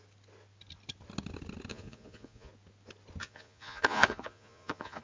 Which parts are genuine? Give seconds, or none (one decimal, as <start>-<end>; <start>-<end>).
0.0-1.7; 2.5-3.2